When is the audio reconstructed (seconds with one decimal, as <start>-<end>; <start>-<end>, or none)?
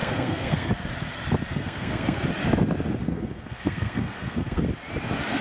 0.0-0.7; 1.5-2.2; 3.0-4.6